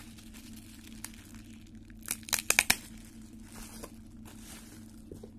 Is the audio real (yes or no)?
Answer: yes